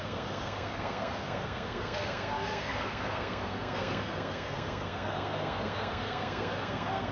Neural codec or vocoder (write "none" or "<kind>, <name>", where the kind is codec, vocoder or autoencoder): codec, SNAC